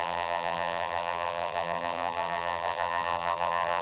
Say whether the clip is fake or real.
fake